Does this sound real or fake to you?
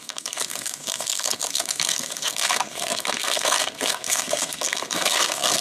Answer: fake